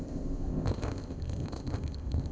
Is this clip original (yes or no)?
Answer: no